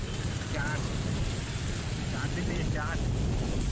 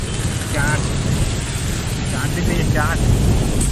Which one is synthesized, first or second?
first